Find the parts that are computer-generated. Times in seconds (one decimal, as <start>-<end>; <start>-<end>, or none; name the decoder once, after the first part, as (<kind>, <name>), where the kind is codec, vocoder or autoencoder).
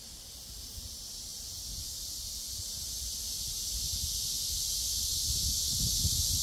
none